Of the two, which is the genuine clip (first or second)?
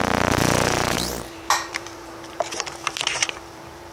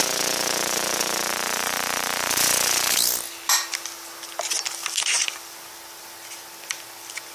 second